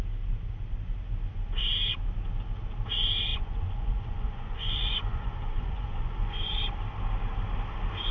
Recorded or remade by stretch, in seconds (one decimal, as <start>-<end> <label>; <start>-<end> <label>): 0.0-3.3 recorded; 3.3-6.5 remade; 6.5-8.1 recorded